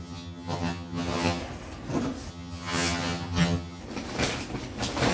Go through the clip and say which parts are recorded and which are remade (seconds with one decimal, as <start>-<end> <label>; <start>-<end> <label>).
0.0-1.4 remade; 1.4-2.3 recorded; 2.3-3.8 remade; 3.8-5.1 recorded